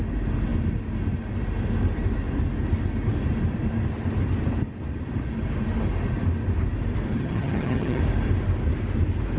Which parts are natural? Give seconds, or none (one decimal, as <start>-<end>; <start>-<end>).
0.0-7.1; 8.0-9.4